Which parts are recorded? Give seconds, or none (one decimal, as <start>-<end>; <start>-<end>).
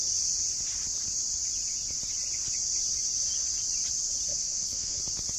0.0-4.3; 5.0-5.4